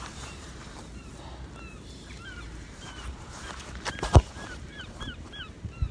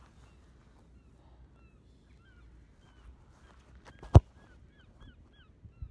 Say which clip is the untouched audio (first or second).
second